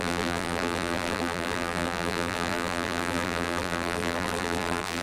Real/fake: fake